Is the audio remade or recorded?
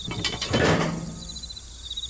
remade